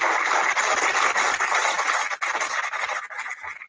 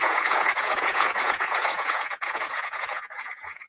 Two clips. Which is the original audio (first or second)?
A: first